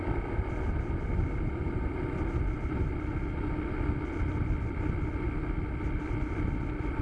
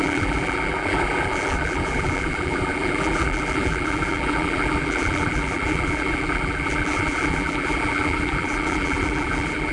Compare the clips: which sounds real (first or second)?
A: first